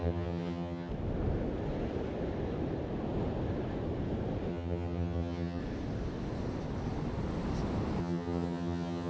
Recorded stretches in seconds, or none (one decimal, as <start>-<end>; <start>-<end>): 0.9-4.5; 5.6-8.0